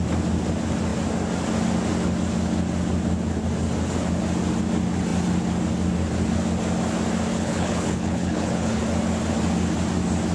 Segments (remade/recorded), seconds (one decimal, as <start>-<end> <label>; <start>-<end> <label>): 0.0-7.3 recorded; 7.3-8.8 remade; 8.8-10.3 recorded